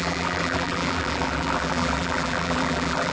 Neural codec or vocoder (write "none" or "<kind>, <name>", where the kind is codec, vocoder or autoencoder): vocoder, BigVGAN v2